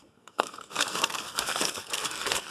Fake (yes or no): yes